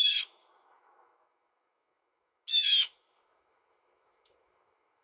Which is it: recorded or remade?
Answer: remade